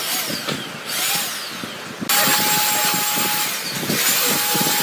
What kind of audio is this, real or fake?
real